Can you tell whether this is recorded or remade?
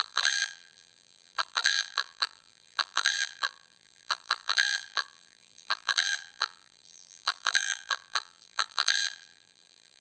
remade